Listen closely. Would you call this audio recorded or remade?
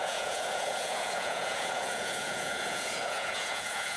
remade